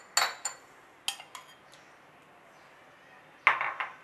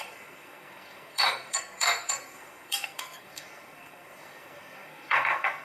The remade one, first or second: second